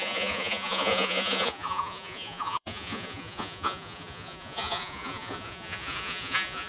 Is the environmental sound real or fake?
fake